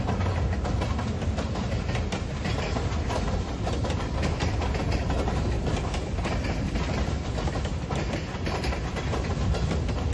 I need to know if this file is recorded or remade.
recorded